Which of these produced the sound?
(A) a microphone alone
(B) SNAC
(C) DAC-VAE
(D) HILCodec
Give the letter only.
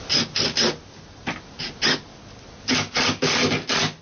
A